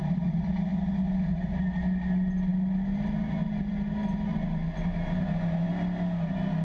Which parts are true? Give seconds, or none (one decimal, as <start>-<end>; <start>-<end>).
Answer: 0.0-6.6